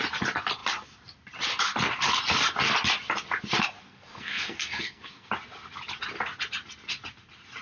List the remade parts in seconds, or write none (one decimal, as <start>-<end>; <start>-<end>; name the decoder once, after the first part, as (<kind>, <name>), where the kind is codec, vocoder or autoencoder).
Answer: 3.8-5.3 (codec, SNAC)